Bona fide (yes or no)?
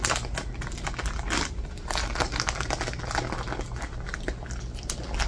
yes